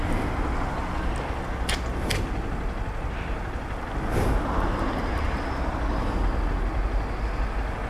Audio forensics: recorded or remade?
recorded